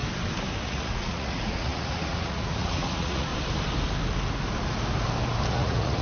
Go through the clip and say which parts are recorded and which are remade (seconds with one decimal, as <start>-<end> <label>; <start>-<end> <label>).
0.0-0.6 recorded; 0.6-3.3 remade; 3.3-5.5 recorded; 5.5-6.0 remade